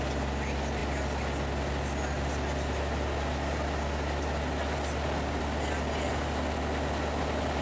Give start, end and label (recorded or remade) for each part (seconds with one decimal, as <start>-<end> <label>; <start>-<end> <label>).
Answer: 0.0-7.6 recorded